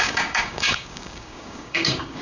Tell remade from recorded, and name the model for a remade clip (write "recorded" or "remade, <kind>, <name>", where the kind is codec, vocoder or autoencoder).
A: remade, codec, DAC